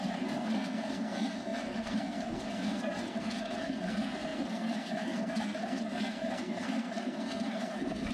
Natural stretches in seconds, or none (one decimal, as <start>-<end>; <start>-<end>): none